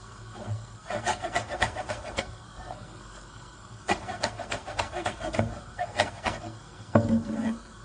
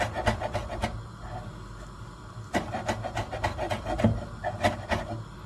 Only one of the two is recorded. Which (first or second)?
second